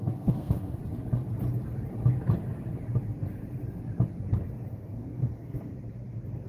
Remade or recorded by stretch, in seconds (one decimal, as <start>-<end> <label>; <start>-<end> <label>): 0.0-0.8 remade; 0.8-4.7 recorded; 4.7-5.7 remade; 5.7-6.5 recorded